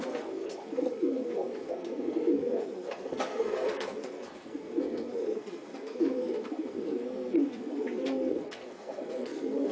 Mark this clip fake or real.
fake